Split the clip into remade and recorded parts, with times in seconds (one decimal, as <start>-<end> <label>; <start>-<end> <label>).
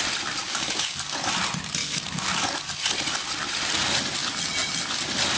0.0-0.4 recorded; 0.4-1.2 remade; 1.2-1.8 recorded; 1.8-2.5 remade; 2.5-5.4 recorded